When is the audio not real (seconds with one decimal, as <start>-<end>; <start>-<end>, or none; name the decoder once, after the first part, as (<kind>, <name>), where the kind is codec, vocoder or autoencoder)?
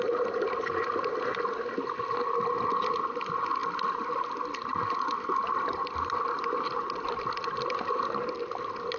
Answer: none